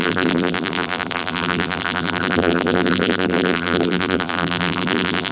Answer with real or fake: fake